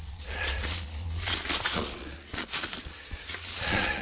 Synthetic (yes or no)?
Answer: yes